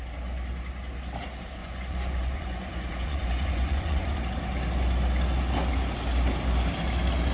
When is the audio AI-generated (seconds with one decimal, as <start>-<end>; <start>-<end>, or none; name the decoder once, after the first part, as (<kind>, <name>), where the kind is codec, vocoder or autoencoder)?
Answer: 1.6-4.2 (vocoder, Vocos)